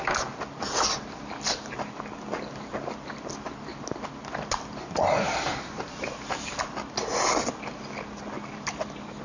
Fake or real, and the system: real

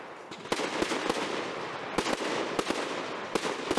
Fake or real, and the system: real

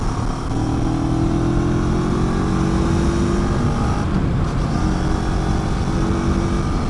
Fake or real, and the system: real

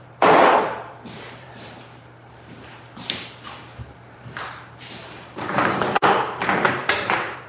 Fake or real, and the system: fake, vocoder, BigVGAN v2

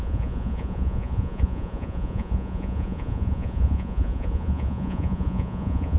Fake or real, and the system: fake, vocoder, Vocos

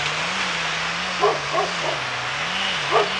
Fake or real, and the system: real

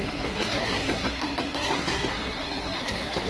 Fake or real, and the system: fake, codec, SNAC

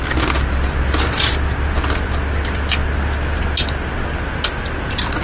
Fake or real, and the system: real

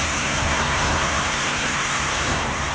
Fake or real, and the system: fake, codec, SNAC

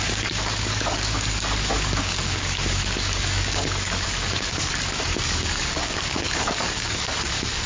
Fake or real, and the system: fake, codec, DAC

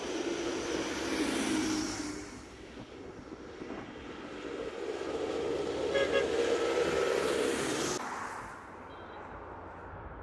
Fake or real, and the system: real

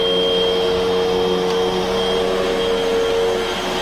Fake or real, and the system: real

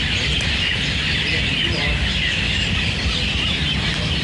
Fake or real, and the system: real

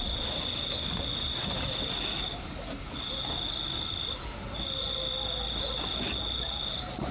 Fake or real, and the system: real